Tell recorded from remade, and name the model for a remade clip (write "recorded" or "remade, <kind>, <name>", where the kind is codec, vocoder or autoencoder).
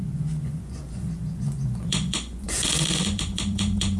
remade, vocoder, Vocos